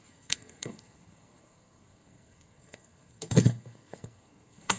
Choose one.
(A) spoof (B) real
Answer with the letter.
A